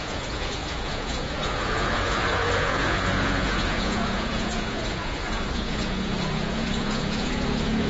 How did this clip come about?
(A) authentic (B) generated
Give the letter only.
B